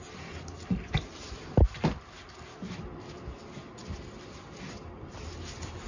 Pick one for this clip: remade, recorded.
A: recorded